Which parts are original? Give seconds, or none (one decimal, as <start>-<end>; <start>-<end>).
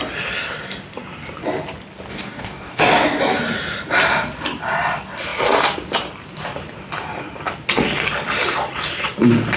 0.0-2.1; 2.8-9.6